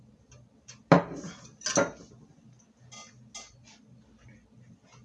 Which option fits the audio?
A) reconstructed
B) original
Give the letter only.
B